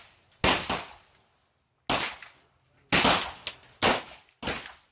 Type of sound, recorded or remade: recorded